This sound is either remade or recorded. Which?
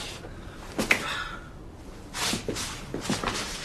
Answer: recorded